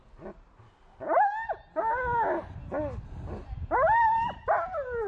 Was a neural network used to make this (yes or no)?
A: no